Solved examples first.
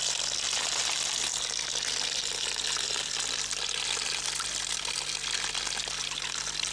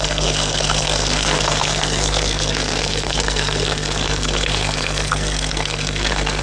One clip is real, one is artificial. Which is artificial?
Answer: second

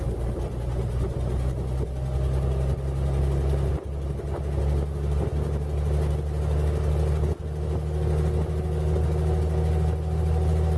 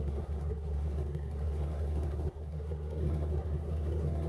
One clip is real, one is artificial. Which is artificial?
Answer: second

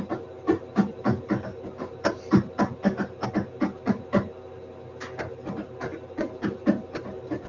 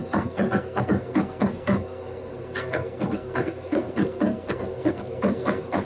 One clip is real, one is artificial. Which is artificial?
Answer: second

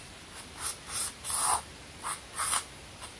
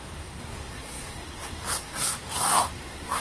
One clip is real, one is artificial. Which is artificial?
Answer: second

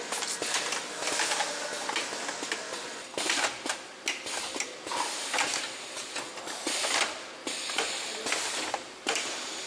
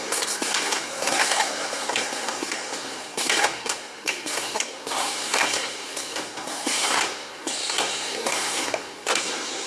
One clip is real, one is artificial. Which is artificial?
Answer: second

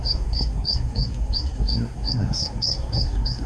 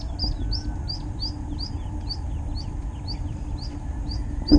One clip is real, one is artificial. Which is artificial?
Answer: first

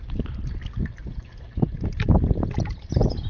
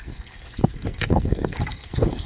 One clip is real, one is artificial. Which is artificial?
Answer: second